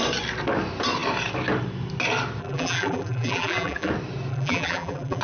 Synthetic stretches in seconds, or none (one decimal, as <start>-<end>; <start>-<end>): 2.4-3.9; 4.3-5.2